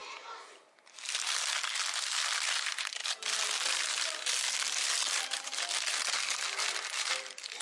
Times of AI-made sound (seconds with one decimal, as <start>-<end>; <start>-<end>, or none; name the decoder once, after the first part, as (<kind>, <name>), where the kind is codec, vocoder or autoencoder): 0.0-1.3 (vocoder, BigVGAN v2); 6.6-7.6